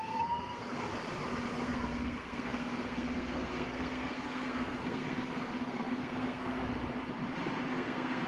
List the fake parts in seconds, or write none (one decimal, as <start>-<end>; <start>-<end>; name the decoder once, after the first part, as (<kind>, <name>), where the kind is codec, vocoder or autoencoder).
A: 0.0-0.9 (codec, SNAC); 1.6-6.6; 7.7-8.3